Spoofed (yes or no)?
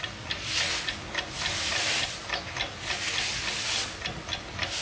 no